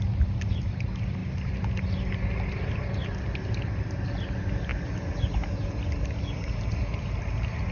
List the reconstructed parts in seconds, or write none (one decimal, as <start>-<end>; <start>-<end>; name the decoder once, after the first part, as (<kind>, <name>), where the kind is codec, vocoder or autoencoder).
none